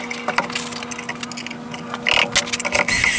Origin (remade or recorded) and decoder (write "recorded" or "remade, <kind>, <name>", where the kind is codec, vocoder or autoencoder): recorded